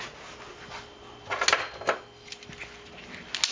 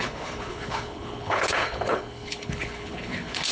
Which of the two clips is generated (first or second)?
second